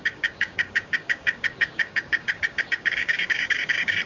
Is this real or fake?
fake